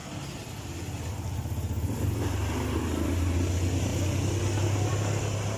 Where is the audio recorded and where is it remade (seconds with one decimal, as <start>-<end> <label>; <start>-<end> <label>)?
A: 0.0-5.6 recorded